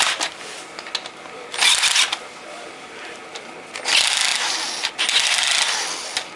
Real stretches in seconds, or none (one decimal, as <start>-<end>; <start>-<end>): 0.0-6.4